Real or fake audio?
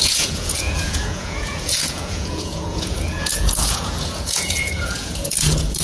fake